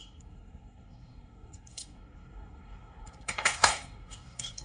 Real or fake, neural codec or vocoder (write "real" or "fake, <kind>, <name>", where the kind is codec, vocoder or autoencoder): fake, codec, SNAC